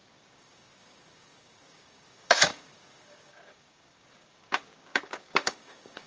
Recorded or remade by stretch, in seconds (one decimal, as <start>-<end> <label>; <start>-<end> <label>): 0.0-6.1 remade